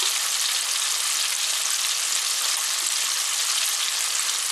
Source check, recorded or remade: recorded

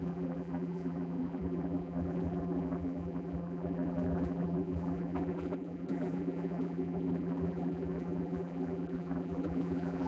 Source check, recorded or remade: remade